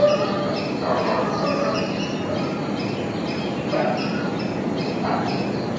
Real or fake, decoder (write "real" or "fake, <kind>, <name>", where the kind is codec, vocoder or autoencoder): real